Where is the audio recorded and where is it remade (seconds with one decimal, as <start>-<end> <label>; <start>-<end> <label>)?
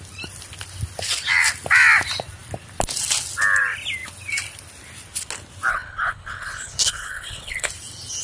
0.0-5.7 recorded; 5.7-7.7 remade; 7.7-8.2 recorded